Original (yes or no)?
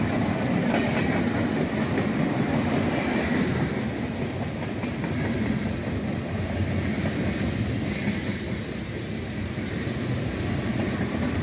yes